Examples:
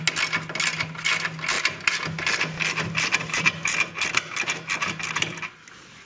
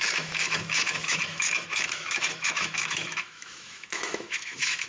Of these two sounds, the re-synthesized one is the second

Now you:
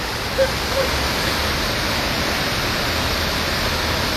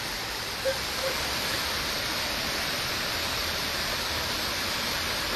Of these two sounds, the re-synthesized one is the second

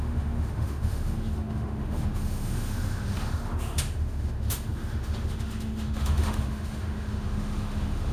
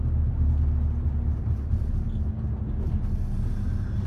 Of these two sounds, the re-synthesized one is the first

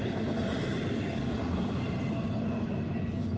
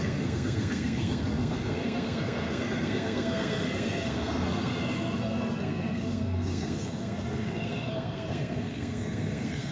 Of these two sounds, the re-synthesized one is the second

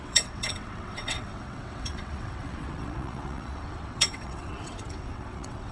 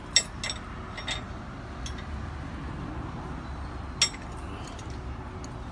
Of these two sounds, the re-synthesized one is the first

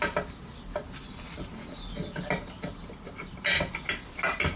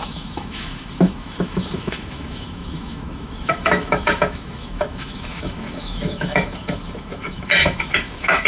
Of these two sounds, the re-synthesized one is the second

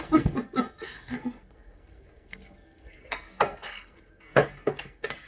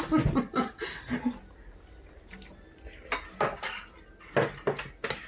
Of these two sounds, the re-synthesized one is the first